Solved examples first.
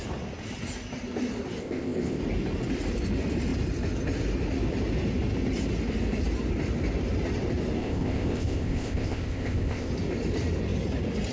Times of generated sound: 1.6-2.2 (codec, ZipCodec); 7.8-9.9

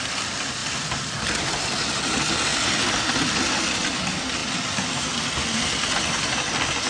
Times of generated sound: none

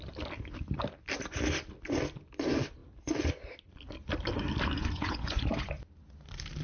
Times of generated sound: 4.8-5.7 (vocoder, Vocos)

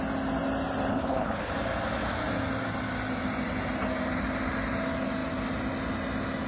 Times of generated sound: 0.9-1.5 (codec, HILCodec)